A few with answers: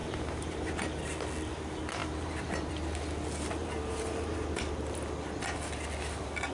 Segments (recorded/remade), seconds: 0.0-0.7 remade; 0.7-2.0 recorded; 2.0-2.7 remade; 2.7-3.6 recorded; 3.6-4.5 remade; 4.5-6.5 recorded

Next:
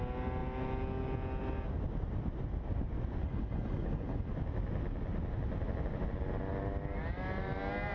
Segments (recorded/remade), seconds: 0.0-3.2 recorded; 3.2-4.3 remade; 4.3-7.9 recorded